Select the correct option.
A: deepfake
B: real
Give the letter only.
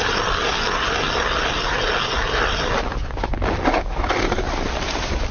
B